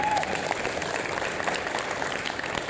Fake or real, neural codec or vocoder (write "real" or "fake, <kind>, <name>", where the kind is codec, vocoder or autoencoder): real